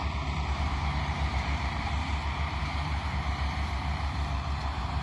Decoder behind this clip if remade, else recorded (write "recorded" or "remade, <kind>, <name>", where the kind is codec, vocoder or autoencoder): remade, vocoder, BigVGAN v2